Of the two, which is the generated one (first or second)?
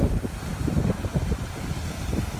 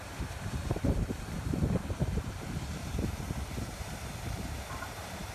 second